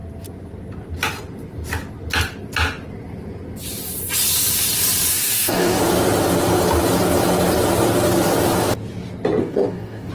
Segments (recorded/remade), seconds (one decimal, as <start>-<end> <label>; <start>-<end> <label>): 0.0-5.1 recorded; 5.1-5.8 remade; 5.8-9.4 recorded; 9.4-10.1 remade